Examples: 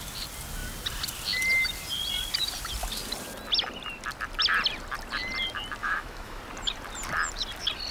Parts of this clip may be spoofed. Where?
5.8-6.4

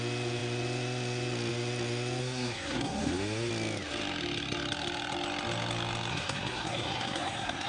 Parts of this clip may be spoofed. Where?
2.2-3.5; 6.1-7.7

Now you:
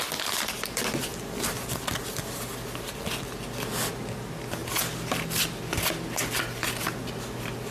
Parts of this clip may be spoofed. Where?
none

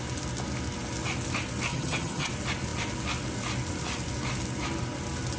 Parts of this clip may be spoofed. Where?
1.7-2.3

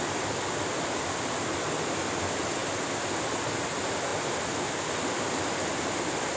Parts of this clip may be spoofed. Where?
none

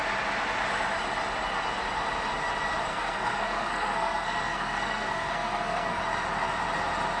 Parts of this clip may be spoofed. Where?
2.9-6.0

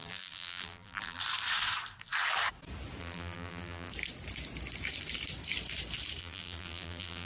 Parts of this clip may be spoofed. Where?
0.0-1.2; 3.0-3.9; 6.2-7.3